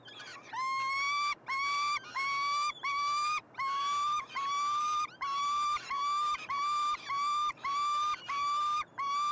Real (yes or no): yes